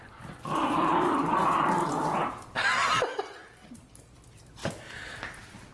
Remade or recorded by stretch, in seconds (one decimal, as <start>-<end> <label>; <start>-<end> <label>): 0.0-0.6 recorded; 0.6-4.0 remade; 4.0-4.6 recorded; 4.6-5.2 remade; 5.2-5.7 recorded